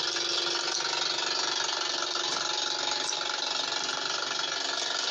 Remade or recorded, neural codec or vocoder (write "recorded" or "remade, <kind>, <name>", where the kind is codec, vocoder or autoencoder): recorded